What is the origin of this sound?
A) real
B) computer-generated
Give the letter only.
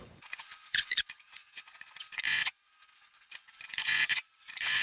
B